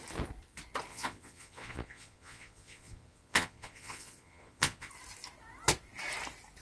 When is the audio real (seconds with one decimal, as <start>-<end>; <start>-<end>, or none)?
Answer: 0.0-0.9; 4.9-6.6